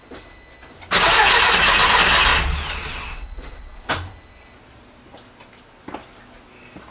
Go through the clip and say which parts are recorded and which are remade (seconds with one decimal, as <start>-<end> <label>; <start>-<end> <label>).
0.0-2.3 recorded; 2.3-3.9 remade; 3.9-6.9 recorded